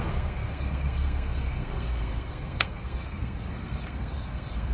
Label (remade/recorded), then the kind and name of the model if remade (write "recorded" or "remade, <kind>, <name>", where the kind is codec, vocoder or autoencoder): remade, codec, SNAC